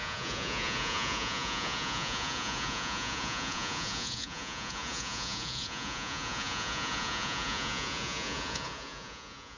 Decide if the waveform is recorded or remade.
remade